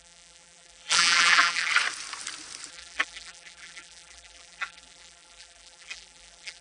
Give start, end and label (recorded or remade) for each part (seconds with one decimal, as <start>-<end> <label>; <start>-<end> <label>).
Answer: 0.0-1.7 remade; 1.7-2.7 recorded; 2.7-6.6 remade